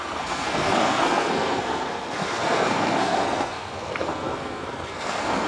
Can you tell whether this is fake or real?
fake